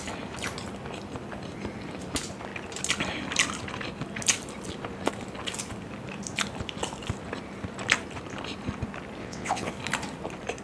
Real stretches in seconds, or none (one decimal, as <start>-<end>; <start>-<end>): 0.0-9.2; 9.7-10.6